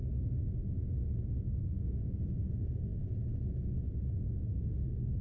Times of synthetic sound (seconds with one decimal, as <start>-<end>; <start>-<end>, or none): 0.0-0.4; 1.5-3.0; 4.4-5.2